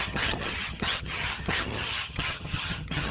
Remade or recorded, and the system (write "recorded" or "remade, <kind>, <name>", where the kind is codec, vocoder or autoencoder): remade, vocoder, HiFi-GAN